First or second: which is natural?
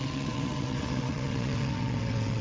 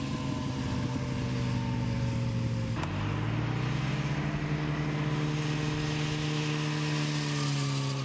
second